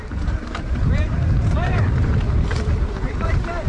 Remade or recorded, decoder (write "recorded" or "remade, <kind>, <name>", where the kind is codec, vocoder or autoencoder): remade, vocoder, BigVGAN v2